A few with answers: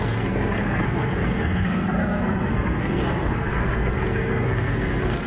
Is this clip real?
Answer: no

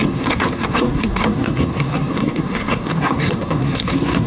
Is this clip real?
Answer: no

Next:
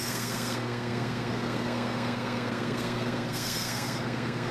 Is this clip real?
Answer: no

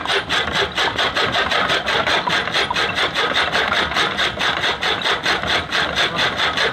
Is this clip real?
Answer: yes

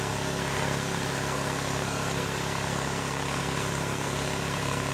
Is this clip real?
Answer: no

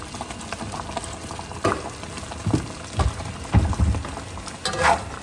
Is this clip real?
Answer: yes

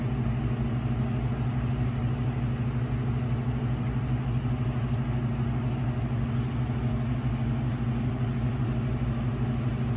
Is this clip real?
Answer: yes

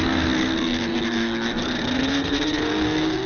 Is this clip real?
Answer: no